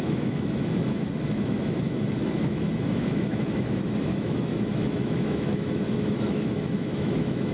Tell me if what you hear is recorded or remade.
remade